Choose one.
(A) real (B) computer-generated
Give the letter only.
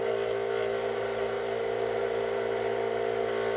A